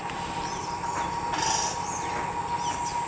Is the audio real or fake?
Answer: real